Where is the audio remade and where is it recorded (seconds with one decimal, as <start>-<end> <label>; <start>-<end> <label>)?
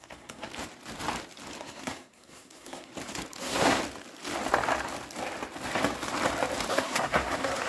0.0-0.5 remade; 0.5-1.6 recorded; 1.6-2.9 remade; 2.9-3.4 recorded; 3.4-3.8 remade; 3.8-6.7 recorded; 6.7-7.7 remade